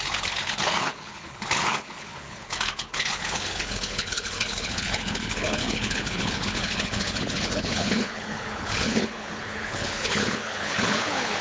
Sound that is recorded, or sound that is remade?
remade